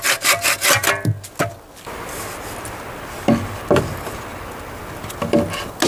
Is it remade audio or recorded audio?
recorded